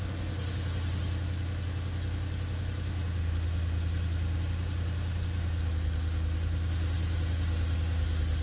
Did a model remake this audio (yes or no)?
no